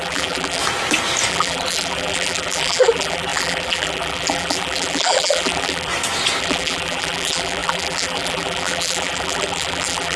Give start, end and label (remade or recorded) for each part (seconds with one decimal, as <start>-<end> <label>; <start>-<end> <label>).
0.0-0.6 remade; 0.6-1.3 recorded; 1.3-5.9 remade; 5.9-6.4 recorded; 6.4-10.2 remade